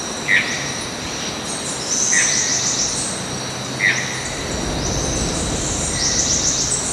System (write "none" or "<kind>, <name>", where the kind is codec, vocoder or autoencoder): none